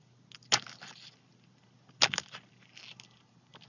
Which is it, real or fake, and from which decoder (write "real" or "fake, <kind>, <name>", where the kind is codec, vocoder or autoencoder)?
real